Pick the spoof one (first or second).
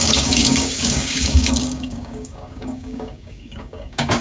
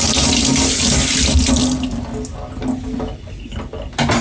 first